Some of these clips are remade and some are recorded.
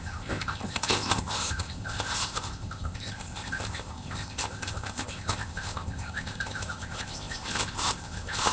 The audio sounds remade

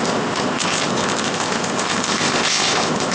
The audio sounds remade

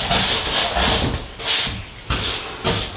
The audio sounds recorded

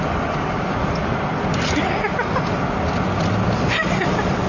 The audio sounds recorded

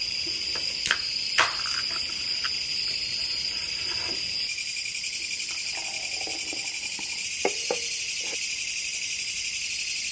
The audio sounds recorded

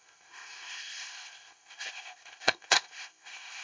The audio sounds remade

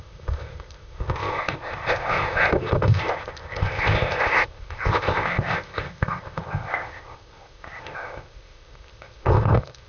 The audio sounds remade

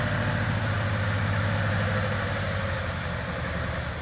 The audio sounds recorded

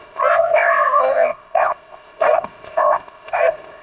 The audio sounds remade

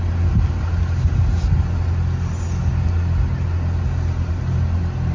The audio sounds recorded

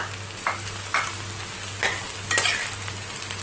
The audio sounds recorded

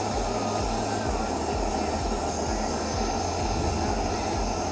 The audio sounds recorded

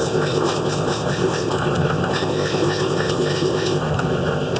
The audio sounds remade